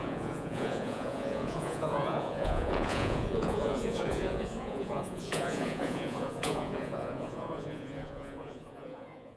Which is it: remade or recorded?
remade